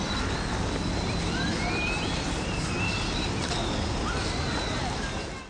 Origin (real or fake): real